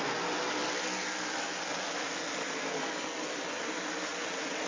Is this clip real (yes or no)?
yes